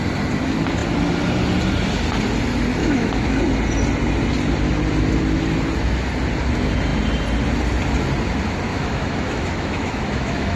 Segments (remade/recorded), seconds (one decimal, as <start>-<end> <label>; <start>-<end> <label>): 0.0-2.8 recorded; 2.8-3.4 remade; 3.4-8.7 recorded; 8.7-10.6 remade